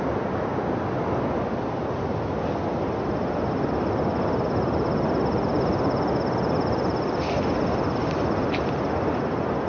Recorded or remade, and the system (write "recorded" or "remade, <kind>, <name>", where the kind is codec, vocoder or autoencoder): recorded